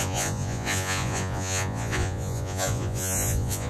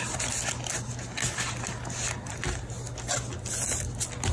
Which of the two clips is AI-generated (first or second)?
first